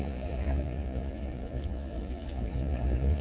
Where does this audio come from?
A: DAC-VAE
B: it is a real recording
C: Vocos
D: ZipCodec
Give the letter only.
C